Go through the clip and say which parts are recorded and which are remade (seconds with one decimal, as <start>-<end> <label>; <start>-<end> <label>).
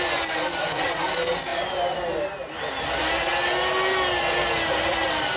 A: 0.0-0.6 recorded; 0.6-1.1 remade; 1.1-5.4 recorded